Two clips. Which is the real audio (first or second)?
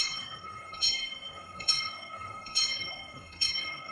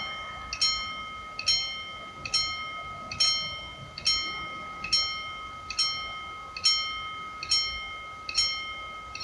second